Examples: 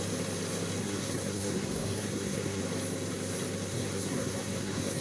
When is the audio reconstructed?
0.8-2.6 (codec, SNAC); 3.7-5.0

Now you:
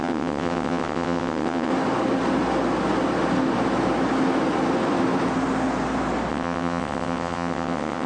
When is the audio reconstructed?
0.0-1.7 (vocoder, WaveNeXt); 6.3-8.1

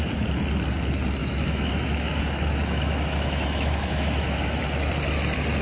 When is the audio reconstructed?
1.2-4.6 (autoencoder, DAC-VAE)